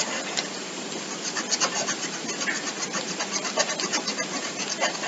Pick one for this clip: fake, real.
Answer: real